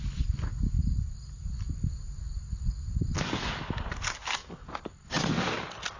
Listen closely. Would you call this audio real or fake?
real